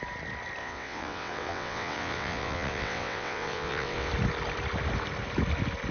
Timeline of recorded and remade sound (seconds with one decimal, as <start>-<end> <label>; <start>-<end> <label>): 0.0-0.6 recorded; 0.6-4.1 remade; 4.1-5.9 recorded